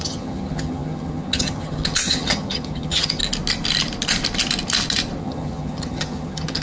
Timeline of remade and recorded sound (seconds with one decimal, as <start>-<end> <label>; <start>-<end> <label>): 0.0-3.2 remade; 3.2-5.2 recorded; 5.2-6.6 remade